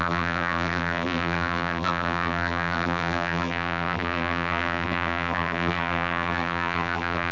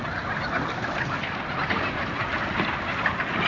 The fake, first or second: first